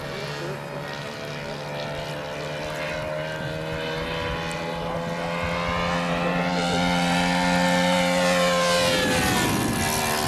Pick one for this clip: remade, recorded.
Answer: recorded